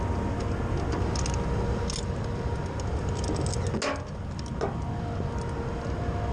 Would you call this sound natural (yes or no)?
yes